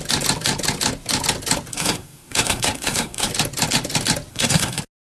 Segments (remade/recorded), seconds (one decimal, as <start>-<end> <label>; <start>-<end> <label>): 0.0-1.7 recorded; 1.7-3.3 remade; 3.3-4.3 recorded; 4.3-4.8 remade; 4.8-5.2 recorded